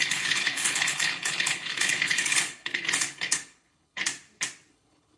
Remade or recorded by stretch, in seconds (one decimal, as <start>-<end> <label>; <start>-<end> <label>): 0.0-4.0 remade; 4.0-4.7 recorded; 4.7-5.2 remade